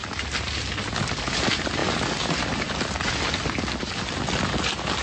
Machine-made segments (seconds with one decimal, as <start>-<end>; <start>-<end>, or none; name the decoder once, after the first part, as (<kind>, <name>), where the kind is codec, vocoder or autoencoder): none